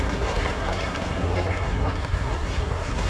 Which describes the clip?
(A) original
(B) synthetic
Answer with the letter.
B